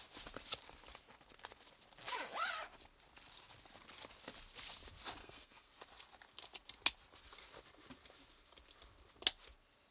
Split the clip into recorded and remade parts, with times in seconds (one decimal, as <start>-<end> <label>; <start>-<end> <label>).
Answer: 0.0-5.2 recorded; 5.2-5.7 remade; 5.7-9.9 recorded